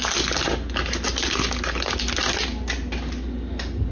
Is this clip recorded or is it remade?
recorded